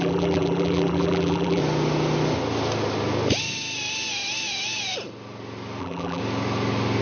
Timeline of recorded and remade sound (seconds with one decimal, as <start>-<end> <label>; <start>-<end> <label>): 0.0-1.6 remade; 1.6-5.8 recorded; 5.8-6.2 remade; 6.2-7.0 recorded